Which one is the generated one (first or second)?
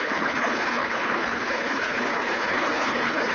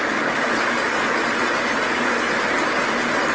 first